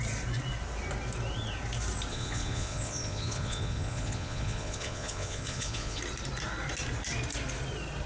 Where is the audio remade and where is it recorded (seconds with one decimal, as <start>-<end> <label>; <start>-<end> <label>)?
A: 0.0-2.1 recorded; 2.1-6.0 remade; 6.0-8.1 recorded